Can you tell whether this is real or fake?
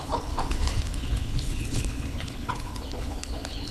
fake